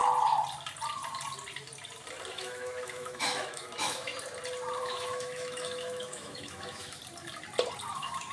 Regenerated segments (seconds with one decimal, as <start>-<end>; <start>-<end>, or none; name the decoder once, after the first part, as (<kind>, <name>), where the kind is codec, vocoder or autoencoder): 2.3-4.1 (autoencoder, DAC-VAE); 4.8-7.0; 7.9-8.3